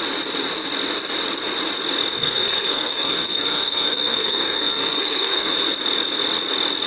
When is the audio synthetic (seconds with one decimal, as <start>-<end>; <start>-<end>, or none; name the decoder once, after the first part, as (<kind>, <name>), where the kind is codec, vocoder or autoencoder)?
2.2-5.5 (codec, SNAC)